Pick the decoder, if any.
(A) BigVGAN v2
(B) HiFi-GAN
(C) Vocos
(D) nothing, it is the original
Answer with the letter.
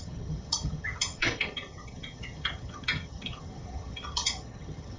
B